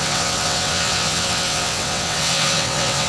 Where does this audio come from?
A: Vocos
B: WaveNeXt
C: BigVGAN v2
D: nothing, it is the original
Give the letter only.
B